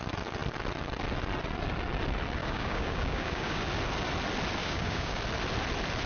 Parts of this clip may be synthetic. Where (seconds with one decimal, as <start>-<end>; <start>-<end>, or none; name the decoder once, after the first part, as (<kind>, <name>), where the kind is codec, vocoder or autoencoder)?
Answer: 2.4-3.6 (codec, DAC); 4.6-5.2